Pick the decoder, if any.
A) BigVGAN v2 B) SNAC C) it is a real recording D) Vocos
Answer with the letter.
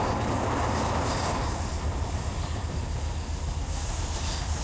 C